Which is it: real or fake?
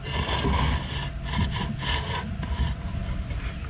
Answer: real